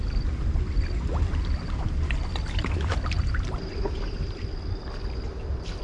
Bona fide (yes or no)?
yes